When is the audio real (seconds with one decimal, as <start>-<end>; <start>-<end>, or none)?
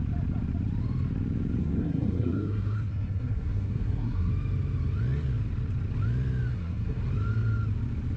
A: 0.0-1.6; 4.3-6.5; 7.0-8.2